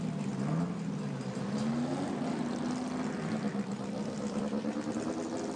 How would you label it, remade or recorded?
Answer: recorded